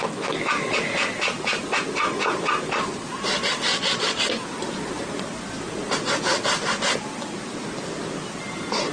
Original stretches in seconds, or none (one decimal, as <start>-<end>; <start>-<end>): 0.0-3.7; 4.2-8.9